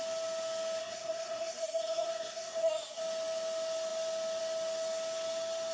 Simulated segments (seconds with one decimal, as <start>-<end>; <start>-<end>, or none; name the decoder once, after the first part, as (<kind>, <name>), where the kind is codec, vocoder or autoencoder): 0.8-3.0 (codec, SNAC)